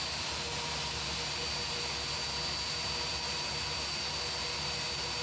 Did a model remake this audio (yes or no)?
no